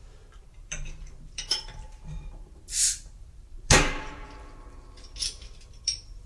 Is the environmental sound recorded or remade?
remade